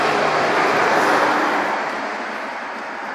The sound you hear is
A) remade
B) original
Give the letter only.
B